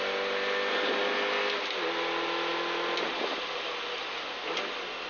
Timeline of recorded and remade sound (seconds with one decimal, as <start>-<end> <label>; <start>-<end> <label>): 0.0-5.1 recorded